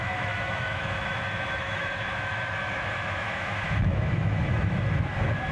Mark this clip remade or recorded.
remade